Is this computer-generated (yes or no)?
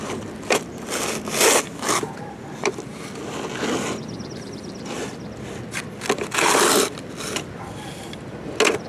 no